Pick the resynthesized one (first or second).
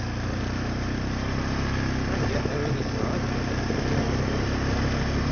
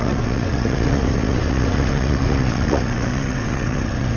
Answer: second